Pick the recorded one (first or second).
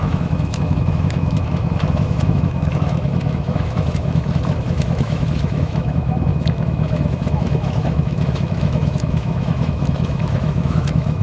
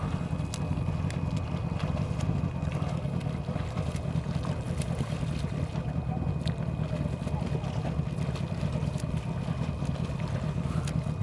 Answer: second